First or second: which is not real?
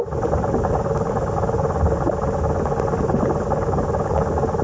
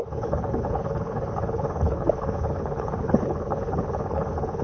second